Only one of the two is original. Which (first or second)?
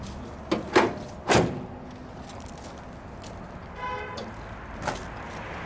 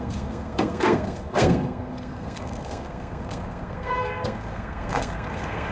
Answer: first